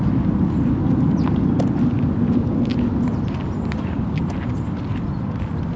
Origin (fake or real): real